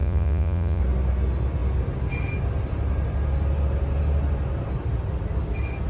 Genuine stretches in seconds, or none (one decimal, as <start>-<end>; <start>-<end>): 0.8-5.9